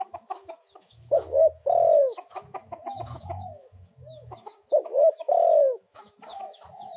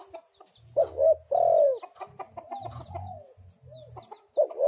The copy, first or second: first